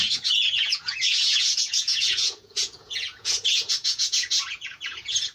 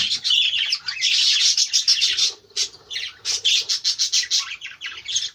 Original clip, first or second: second